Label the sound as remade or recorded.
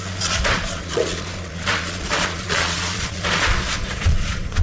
remade